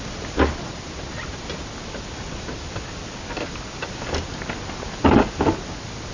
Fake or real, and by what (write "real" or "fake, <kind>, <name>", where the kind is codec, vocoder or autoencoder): real